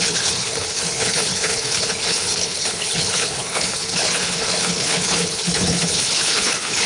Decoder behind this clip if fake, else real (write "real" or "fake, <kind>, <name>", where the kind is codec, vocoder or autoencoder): fake, codec, HILCodec